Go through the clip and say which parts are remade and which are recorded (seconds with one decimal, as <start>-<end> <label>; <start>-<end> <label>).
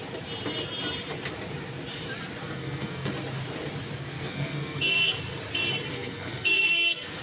0.0-2.4 recorded; 2.4-3.1 remade; 3.1-4.0 recorded; 4.0-5.2 remade; 5.2-5.9 recorded; 5.9-7.2 remade